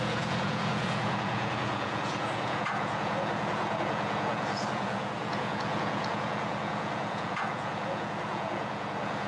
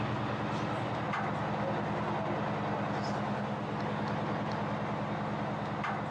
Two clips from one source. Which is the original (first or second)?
second